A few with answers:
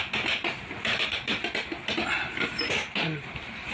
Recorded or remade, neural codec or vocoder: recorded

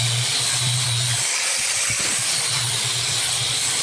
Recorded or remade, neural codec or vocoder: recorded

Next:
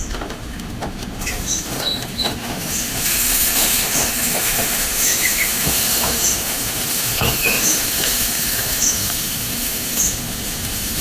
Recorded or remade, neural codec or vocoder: remade, autoencoder, DAC-VAE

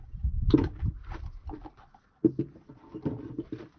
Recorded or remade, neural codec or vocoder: recorded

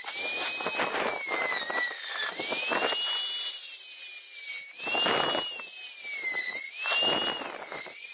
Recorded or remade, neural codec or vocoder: recorded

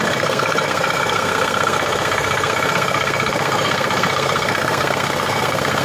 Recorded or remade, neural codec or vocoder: remade, codec, SNAC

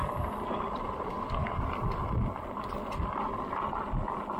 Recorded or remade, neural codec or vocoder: recorded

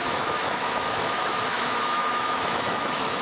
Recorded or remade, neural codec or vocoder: remade, autoencoder, DAC-VAE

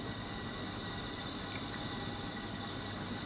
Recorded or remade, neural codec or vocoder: recorded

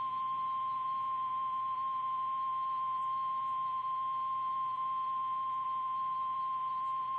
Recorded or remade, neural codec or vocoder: remade, vocoder, Vocos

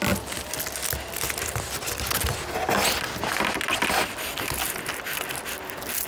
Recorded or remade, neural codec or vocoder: recorded